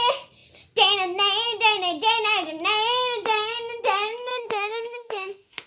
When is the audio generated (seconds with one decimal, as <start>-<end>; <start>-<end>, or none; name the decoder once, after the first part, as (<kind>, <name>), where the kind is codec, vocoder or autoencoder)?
4.3-5.7 (autoencoder, DAC-VAE)